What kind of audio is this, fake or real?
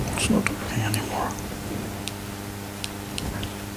real